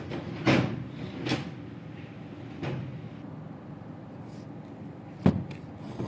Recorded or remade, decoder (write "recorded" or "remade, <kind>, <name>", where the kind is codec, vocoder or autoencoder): recorded